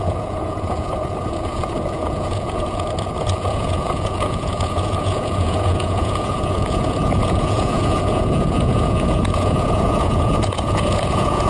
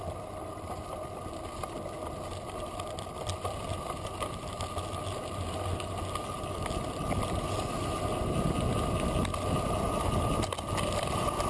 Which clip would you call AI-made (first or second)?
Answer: first